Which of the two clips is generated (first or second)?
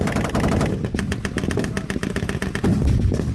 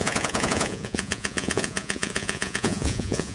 second